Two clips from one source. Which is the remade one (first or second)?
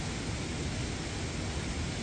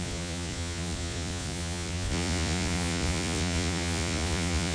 second